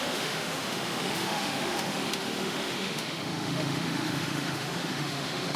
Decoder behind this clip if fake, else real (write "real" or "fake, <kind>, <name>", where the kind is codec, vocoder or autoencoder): fake, autoencoder, DAC-VAE